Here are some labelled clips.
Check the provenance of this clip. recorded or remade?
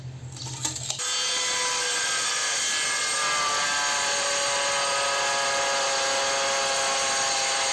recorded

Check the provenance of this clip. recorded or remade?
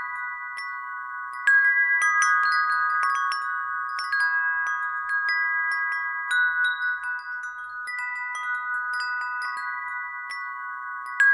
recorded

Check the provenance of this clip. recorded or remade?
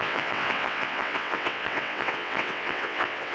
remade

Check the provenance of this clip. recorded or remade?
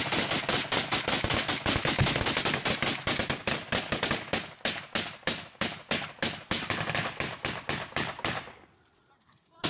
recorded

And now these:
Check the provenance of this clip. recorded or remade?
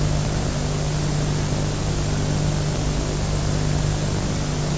recorded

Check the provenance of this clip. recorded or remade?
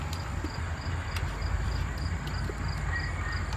recorded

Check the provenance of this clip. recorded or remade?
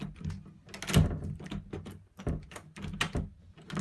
recorded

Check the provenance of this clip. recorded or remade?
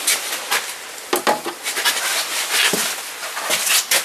recorded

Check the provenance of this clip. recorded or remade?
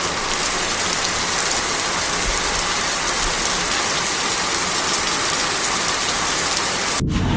recorded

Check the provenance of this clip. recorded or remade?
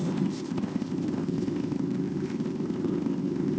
remade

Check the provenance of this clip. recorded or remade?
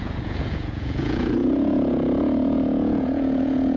remade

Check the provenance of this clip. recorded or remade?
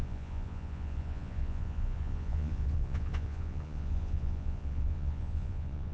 remade